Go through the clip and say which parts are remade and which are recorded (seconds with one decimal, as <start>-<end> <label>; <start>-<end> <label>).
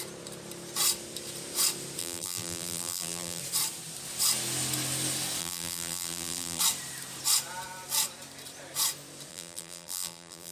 0.0-2.0 recorded; 2.0-3.4 remade; 3.4-5.4 recorded; 5.4-6.6 remade; 6.6-9.3 recorded; 9.3-10.5 remade